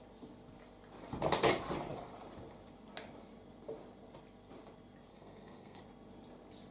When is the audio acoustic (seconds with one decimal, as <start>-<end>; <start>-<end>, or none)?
0.0-5.1; 5.8-6.7